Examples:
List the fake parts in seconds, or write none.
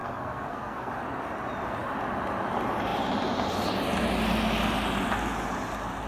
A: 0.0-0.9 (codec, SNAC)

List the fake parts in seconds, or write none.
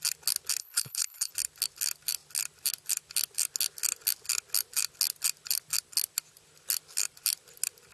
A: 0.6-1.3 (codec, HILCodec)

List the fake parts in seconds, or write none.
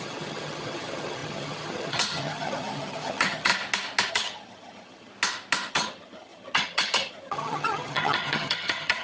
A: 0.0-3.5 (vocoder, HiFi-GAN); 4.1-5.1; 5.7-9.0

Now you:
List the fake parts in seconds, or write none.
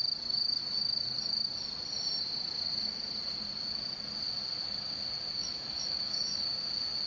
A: 5.4-6.4 (autoencoder, DAC-VAE)